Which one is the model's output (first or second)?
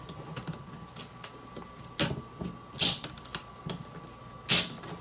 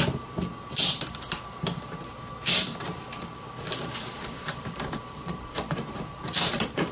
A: second